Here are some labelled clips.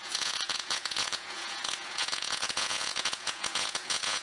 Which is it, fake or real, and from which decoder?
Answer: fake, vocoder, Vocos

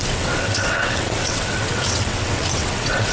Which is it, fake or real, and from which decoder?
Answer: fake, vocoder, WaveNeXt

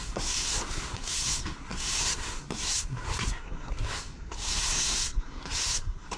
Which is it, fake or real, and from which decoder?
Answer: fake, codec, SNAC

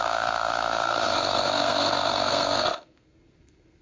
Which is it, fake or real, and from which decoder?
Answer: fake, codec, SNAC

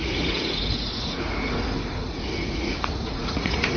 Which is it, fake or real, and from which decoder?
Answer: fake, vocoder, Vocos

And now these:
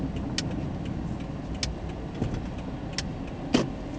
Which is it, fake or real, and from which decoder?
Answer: real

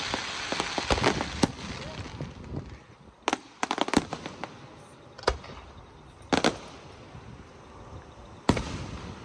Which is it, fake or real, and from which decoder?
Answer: real